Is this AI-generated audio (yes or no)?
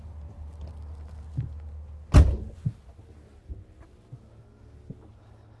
no